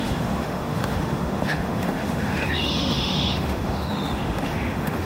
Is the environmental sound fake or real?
fake